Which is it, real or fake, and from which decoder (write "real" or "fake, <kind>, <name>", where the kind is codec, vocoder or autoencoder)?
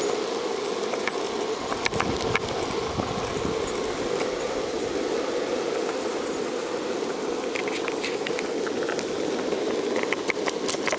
real